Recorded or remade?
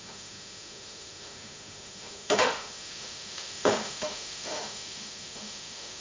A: remade